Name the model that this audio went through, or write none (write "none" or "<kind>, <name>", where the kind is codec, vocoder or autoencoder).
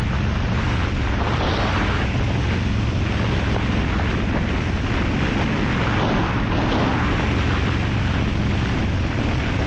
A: none